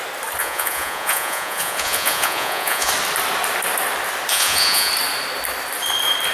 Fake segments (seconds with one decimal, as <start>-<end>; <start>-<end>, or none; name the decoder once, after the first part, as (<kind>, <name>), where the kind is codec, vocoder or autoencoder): 0.4-2.9 (vocoder, Vocos); 4.3-4.9